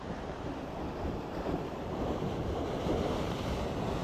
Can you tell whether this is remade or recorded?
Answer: remade